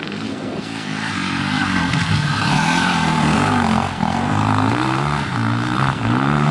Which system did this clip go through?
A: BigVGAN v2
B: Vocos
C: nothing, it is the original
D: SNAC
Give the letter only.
D